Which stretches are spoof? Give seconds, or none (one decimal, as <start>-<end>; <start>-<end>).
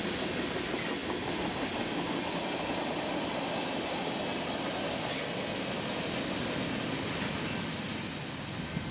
none